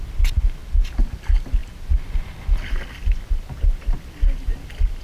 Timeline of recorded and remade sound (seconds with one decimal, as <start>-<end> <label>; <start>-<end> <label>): 0.0-5.0 recorded